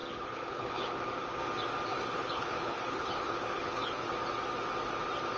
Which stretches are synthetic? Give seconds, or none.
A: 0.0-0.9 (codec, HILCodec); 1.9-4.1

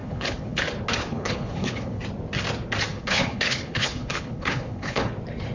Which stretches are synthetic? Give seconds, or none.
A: 0.0-0.6 (codec, HILCodec); 1.0-2.0; 2.9-5.1

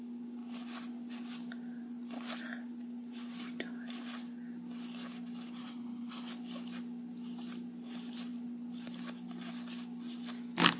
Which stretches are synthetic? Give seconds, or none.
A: 5.6-6.3 (codec, HILCodec)

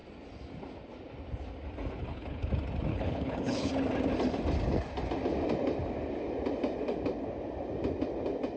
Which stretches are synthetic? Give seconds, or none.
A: 2.0-2.5 (codec, HILCodec); 2.9-3.7

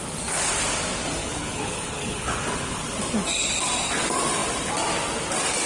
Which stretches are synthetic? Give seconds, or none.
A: 1.2-2.8 (codec, HILCodec)